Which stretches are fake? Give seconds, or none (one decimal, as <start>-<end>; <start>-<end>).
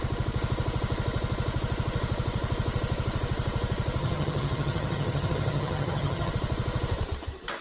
4.0-6.3